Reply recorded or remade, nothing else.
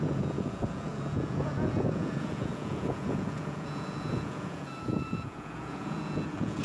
remade